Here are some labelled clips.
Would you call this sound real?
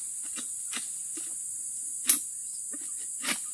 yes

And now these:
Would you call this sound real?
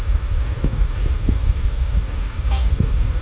no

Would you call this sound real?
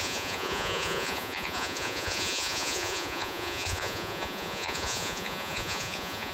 no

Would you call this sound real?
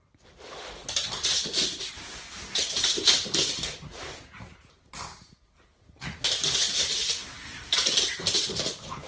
no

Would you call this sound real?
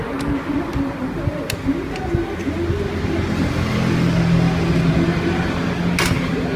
yes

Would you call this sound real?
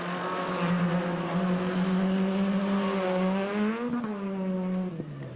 yes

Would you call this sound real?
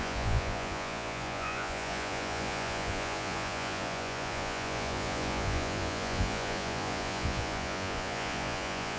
no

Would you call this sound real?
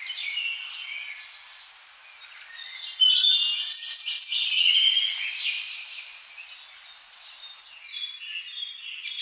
yes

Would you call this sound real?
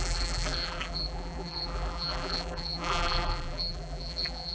no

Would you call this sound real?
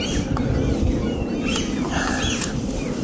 yes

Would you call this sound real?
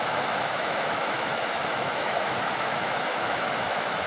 no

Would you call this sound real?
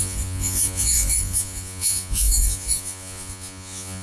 no